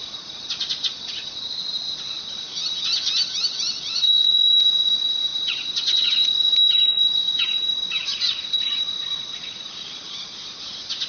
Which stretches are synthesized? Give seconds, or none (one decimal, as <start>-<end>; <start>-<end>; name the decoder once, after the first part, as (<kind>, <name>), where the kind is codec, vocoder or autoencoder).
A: 0.0-2.6 (vocoder, Vocos); 3.6-11.1

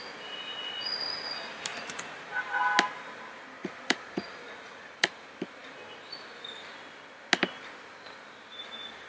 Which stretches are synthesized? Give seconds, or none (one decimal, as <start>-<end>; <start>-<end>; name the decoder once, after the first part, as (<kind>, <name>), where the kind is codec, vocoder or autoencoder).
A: 1.7-2.6 (vocoder, Vocos); 3.6-5.1

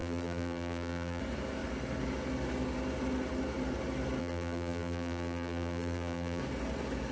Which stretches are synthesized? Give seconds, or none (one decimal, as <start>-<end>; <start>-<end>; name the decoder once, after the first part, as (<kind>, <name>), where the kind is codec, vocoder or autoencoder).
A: 0.0-1.2 (vocoder, BigVGAN v2); 4.2-6.4